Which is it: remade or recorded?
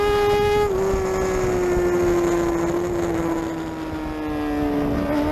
recorded